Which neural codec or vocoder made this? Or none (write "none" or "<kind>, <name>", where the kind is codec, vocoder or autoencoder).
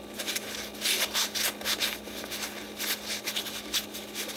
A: none